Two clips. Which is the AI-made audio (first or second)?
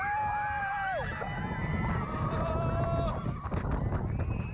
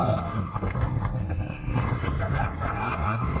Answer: second